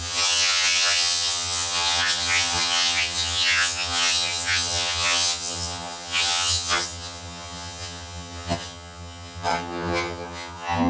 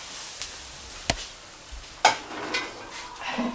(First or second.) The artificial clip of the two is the first